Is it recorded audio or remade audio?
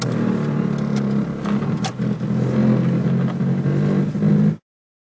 recorded